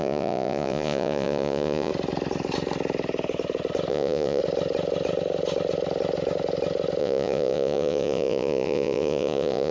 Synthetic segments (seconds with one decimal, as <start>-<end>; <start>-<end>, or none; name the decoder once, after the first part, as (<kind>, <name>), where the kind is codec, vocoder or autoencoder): 0.0-1.9 (vocoder, Vocos); 3.9-4.4; 7.0-9.7